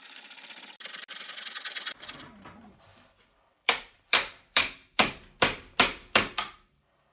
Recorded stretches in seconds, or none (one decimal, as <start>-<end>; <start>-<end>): 0.0-2.9